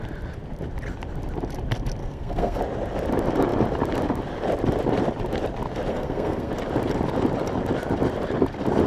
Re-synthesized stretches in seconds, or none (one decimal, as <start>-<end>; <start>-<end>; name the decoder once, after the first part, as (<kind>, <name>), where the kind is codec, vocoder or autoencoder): 2.0-2.6 (codec, SNAC); 5.9-6.5